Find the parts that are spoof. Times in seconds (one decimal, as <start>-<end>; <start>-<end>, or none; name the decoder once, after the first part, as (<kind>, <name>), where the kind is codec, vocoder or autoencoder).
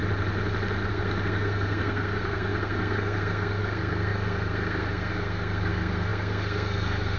0.9-7.2 (codec, SNAC)